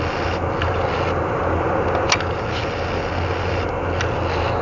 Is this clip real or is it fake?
real